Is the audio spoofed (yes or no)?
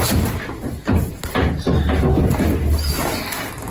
no